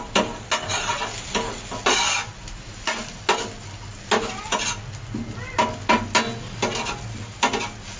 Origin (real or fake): real